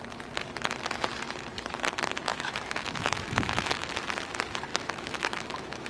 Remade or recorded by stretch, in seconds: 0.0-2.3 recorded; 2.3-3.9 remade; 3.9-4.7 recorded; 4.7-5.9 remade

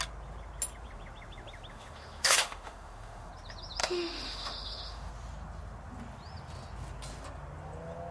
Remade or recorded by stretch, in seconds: 0.0-1.7 recorded; 1.7-3.3 remade; 3.3-3.8 recorded; 3.8-5.1 remade; 5.1-8.1 recorded

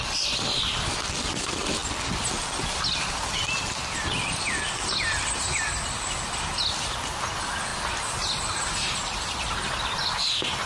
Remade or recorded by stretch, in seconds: 0.0-10.7 recorded

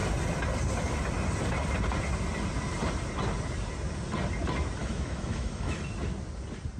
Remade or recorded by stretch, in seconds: 0.0-4.8 recorded; 4.8-5.9 remade; 5.9-6.8 recorded

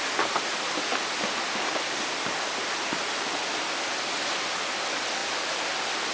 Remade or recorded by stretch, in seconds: 0.0-6.1 recorded